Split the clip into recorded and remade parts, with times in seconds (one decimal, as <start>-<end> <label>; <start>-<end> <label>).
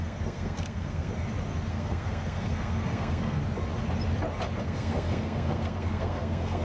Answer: 0.0-1.1 remade; 1.1-1.7 recorded; 1.7-3.4 remade; 3.4-4.6 recorded; 4.6-6.6 remade